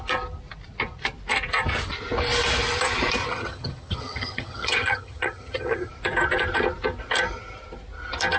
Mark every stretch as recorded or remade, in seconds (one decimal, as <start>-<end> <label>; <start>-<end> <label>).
0.0-3.2 recorded; 3.2-5.9 remade; 5.9-8.4 recorded